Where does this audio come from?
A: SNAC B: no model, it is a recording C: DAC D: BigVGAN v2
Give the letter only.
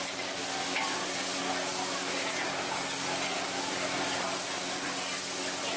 B